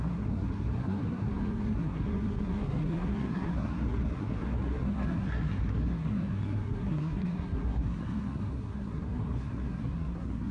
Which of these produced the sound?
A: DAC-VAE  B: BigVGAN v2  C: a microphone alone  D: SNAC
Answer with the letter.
D